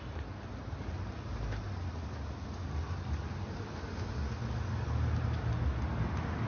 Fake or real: real